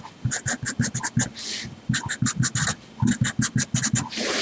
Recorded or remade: recorded